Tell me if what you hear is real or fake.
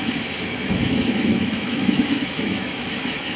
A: fake